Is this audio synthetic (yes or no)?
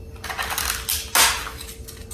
no